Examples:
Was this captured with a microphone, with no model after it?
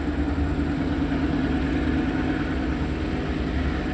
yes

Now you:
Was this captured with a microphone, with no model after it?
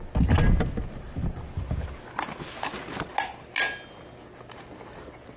yes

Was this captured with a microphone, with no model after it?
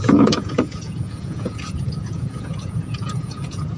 no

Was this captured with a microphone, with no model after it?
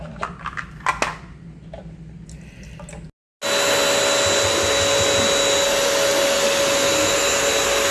yes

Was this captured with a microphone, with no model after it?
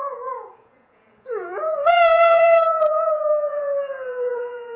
no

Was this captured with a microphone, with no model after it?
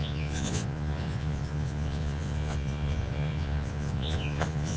no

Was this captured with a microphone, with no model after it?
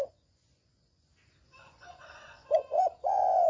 no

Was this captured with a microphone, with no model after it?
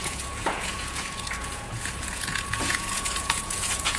no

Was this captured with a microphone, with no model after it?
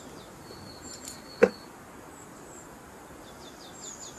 yes